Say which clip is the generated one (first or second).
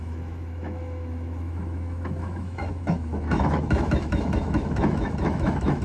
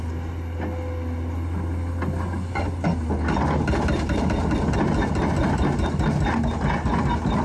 first